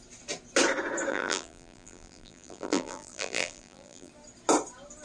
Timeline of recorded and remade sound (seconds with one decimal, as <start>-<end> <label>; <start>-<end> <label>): 0.0-1.1 recorded; 1.1-4.1 remade; 4.1-5.0 recorded

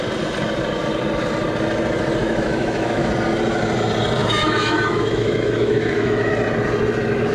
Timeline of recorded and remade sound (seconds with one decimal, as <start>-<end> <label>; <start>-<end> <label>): 0.0-2.2 recorded; 2.2-3.1 remade; 3.1-4.2 recorded; 4.2-6.3 remade; 6.3-7.3 recorded

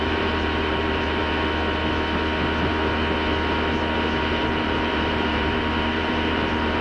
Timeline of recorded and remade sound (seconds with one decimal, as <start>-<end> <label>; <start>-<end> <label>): 0.0-1.2 remade; 1.2-4.2 recorded; 4.2-6.8 remade